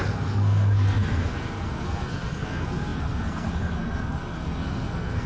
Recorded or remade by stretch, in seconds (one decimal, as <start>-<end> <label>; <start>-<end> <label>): 0.0-5.3 remade